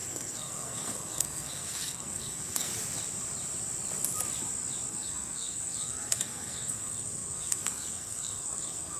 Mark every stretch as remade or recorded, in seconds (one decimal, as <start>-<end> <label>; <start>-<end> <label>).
0.0-2.7 remade; 2.7-4.9 recorded; 4.9-9.0 remade